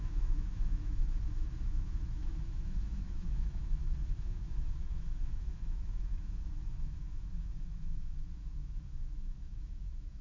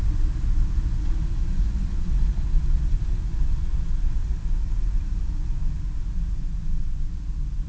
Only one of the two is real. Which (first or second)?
second